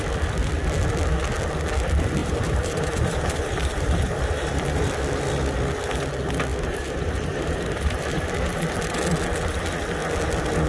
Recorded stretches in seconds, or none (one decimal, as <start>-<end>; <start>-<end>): 0.0-2.2; 4.9-6.5; 8.2-10.7